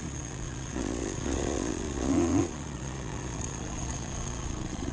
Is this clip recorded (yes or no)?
no